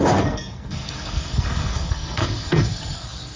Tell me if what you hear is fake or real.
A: fake